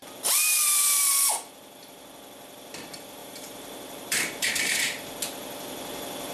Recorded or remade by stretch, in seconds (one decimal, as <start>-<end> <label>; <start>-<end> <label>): 0.0-3.2 recorded; 3.2-4.8 remade; 4.8-6.3 recorded